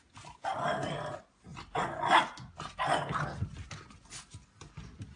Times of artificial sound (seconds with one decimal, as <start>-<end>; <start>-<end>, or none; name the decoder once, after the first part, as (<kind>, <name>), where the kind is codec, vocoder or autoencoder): none